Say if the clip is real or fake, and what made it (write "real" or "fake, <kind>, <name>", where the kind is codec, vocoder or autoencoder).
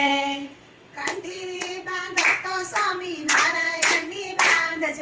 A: fake, vocoder, WaveNeXt